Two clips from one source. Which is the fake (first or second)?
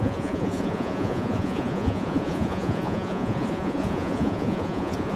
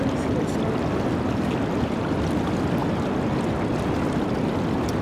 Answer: first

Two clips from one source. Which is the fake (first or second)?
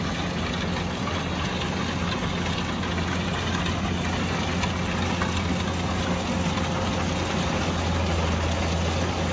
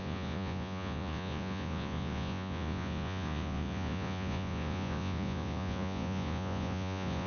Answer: second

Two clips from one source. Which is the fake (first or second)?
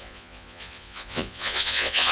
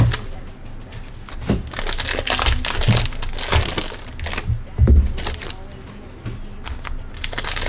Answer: first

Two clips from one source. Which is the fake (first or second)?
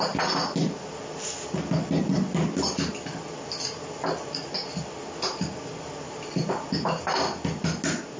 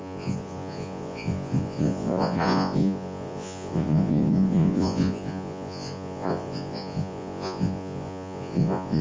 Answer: second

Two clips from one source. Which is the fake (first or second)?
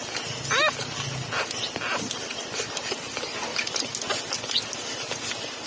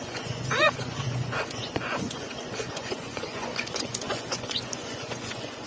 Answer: second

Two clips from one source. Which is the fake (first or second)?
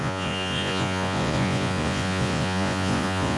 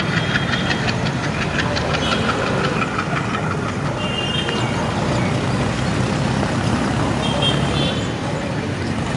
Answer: first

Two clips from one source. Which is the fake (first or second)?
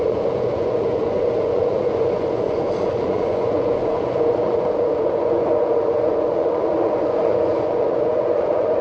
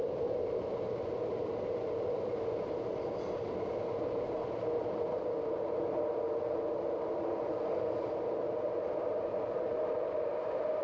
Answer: first